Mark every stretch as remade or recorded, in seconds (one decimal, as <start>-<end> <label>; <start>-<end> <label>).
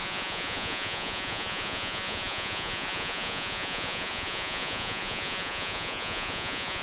0.0-6.8 remade